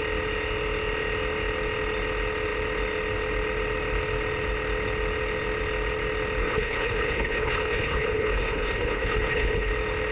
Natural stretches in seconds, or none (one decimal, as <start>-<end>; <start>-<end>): 0.0-6.4; 9.7-10.1